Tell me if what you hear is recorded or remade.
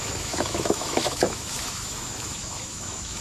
remade